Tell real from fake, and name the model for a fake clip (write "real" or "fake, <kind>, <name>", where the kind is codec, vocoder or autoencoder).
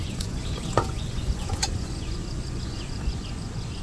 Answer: fake, vocoder, Vocos